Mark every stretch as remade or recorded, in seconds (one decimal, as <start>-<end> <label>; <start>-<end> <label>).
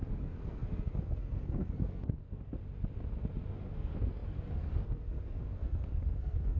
0.0-2.6 remade; 2.6-3.5 recorded; 3.5-6.6 remade